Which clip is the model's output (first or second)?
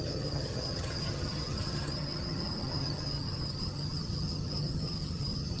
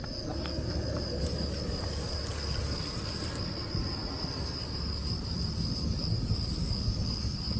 first